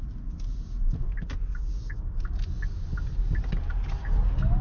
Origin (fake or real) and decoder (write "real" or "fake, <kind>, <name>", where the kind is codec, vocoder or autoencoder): real